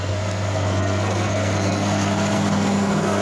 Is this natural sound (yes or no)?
no